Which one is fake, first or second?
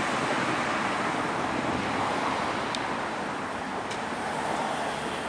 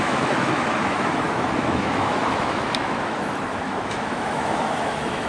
second